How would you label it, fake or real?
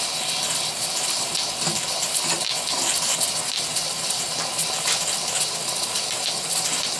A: real